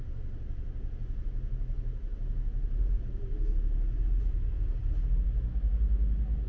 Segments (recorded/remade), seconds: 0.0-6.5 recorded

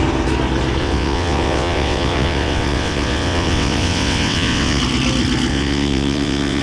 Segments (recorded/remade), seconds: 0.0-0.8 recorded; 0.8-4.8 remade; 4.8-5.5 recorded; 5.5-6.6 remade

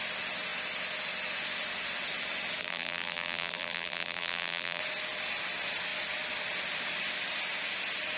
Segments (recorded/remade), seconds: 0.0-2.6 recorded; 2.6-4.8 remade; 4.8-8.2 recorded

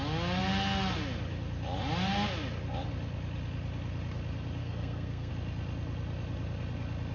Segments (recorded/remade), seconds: 0.0-4.6 recorded; 4.6-5.3 remade; 5.3-7.1 recorded

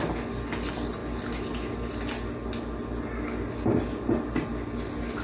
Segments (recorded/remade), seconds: 0.0-5.2 recorded

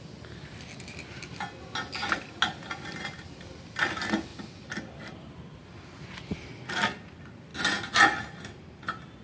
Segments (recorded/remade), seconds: 0.0-9.2 recorded

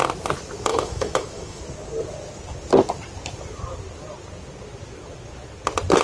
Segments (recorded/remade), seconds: 0.0-0.7 recorded; 0.7-1.6 remade; 1.6-6.0 recorded

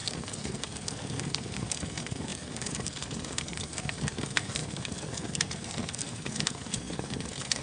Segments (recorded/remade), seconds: 0.0-7.6 remade